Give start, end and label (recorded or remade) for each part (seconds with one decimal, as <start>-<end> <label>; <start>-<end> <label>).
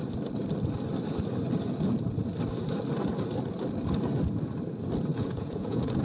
0.0-5.1 recorded; 5.1-6.0 remade